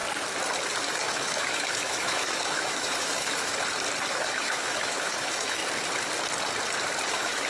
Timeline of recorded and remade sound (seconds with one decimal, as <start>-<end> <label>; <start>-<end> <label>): 0.0-0.9 recorded; 0.9-3.5 remade; 3.5-4.1 recorded; 4.1-5.6 remade; 5.6-7.1 recorded; 7.1-7.5 remade

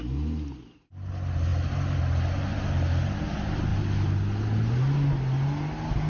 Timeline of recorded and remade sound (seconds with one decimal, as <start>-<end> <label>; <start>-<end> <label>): 0.0-6.1 recorded

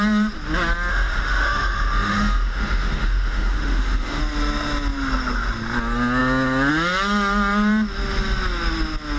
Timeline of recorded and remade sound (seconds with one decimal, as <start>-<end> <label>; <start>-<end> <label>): 0.0-0.9 recorded; 0.9-4.2 remade; 4.2-9.2 recorded

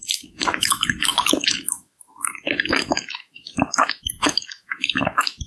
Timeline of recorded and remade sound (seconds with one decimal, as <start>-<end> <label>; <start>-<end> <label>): 0.0-5.5 remade

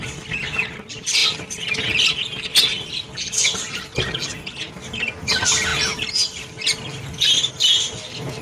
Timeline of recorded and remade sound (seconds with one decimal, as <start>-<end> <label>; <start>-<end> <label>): 0.0-8.4 recorded

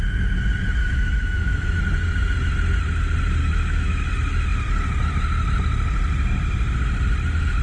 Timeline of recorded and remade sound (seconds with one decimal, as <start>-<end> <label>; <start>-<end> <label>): 0.0-0.8 recorded; 0.8-1.8 remade; 1.8-3.4 recorded; 3.4-4.1 remade; 4.1-7.6 recorded